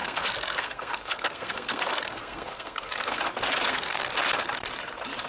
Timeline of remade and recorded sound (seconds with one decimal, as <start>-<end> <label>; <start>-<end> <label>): 0.0-3.2 remade; 3.2-3.6 recorded; 3.6-4.1 remade; 4.1-5.3 recorded